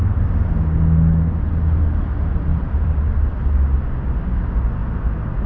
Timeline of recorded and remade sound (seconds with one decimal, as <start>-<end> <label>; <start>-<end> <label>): 0.0-2.5 recorded; 2.5-3.3 remade; 3.3-5.5 recorded